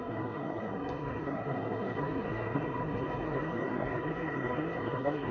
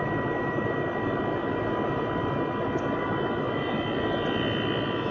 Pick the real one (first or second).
second